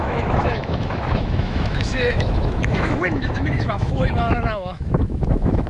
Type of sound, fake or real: fake